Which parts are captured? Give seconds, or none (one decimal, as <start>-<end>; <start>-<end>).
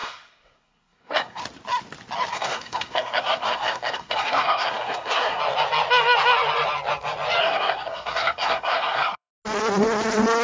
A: 1.4-2.3; 5.4-7.4; 9.3-10.4